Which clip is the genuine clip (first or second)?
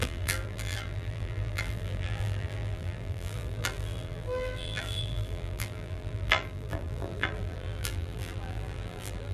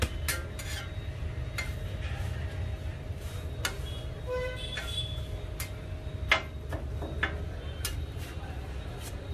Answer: second